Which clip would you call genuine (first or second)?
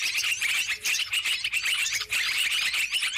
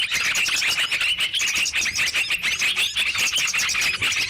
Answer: second